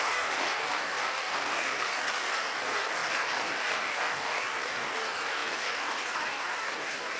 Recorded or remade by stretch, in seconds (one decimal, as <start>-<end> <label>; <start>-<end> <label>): 0.0-7.2 remade